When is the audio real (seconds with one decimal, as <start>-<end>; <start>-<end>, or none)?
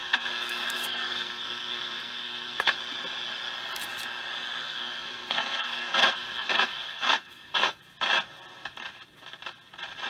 2.8-4.6; 7.8-10.1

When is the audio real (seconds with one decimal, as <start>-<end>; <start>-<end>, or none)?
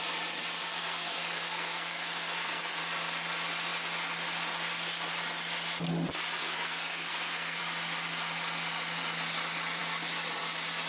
0.0-0.8; 2.8-6.4; 7.6-10.9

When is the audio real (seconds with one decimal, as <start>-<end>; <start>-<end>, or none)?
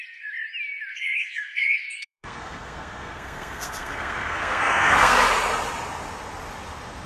0.0-0.9; 5.2-7.1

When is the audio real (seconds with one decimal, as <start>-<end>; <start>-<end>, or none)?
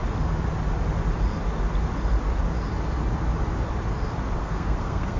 0.0-4.4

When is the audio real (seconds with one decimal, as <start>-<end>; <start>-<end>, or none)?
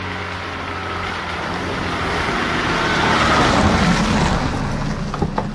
0.0-5.5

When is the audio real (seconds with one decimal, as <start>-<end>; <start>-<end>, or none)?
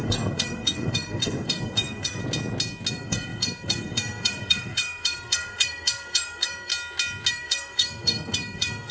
2.2-2.9; 6.7-7.3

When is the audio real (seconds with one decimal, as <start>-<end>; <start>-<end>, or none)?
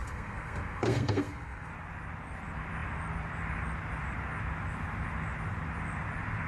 1.7-6.5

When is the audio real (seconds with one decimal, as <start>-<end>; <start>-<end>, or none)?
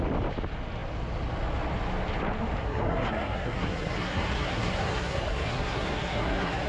0.0-2.6